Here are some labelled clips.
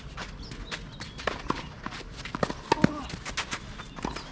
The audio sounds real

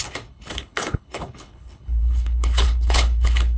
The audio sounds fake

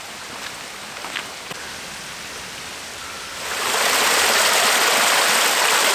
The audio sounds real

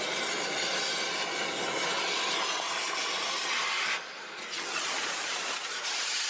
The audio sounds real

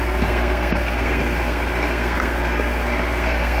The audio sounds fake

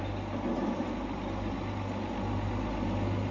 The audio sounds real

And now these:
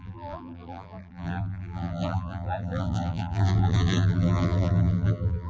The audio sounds fake